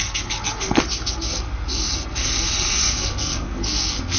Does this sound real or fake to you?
fake